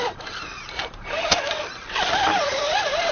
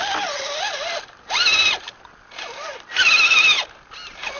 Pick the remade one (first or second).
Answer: first